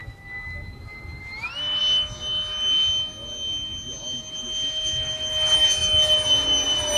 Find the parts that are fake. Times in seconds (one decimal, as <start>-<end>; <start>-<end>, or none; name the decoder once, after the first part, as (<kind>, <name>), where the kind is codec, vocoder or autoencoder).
none